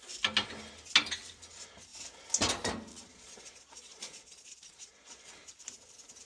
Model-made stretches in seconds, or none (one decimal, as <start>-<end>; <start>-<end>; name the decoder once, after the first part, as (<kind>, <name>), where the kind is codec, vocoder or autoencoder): 2.9-5.3 (vocoder, Vocos)